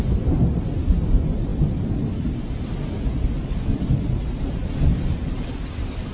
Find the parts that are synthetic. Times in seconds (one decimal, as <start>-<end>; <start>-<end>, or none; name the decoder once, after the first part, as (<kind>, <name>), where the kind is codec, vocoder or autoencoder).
none